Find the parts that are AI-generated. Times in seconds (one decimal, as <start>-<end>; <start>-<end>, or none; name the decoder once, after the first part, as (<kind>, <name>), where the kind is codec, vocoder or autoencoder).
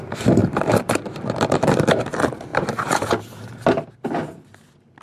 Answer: 0.4-1.9 (vocoder, BigVGAN v2)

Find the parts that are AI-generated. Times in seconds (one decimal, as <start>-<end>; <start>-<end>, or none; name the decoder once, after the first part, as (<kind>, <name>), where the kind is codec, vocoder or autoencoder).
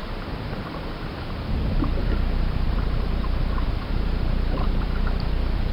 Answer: 2.0-5.7 (vocoder, BigVGAN v2)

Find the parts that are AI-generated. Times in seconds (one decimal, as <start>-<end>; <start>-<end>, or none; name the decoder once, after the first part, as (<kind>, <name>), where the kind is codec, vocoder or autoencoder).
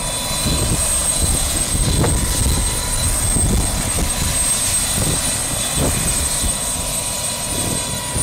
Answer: 1.0-1.9 (vocoder, Vocos)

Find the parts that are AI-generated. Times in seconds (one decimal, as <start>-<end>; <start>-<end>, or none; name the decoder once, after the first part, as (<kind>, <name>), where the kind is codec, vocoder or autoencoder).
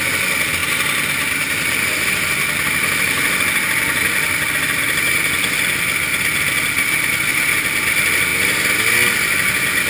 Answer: none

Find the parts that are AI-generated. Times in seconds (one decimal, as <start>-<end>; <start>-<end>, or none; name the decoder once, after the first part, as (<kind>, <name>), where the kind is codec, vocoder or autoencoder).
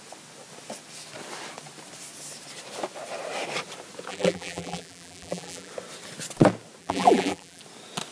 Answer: 4.1-5.7 (vocoder, BigVGAN v2); 6.8-7.6